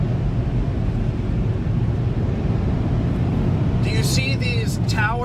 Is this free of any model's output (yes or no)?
yes